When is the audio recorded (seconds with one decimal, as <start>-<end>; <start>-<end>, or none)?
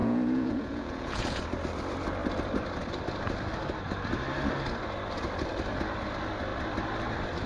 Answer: 1.4-7.5